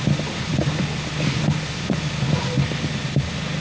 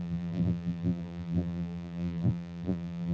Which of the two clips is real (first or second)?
first